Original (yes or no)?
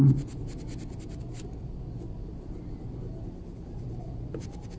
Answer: yes